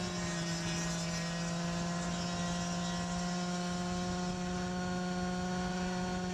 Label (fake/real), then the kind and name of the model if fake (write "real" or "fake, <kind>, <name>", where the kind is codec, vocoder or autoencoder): real